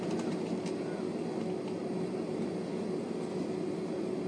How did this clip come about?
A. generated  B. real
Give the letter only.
B